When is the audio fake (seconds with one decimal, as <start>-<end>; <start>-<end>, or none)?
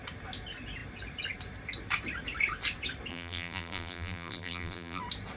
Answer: 3.1-5.0